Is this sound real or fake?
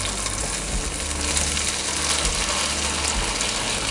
real